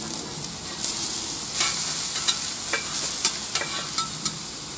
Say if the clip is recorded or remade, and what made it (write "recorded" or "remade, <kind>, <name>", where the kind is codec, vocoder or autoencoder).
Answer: recorded